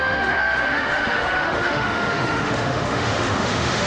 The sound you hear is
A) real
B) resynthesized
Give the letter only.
B